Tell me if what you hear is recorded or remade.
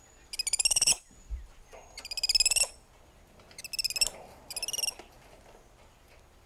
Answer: recorded